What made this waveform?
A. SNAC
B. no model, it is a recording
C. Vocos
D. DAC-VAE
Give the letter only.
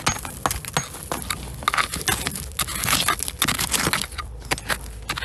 B